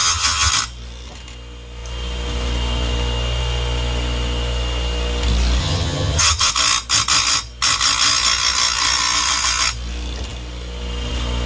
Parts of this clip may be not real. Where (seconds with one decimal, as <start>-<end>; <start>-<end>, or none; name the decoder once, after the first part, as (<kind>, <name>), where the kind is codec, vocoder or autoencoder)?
0.0-0.5 (vocoder, HiFi-GAN); 5.6-6.5